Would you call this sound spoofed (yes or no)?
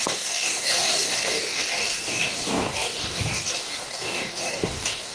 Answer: yes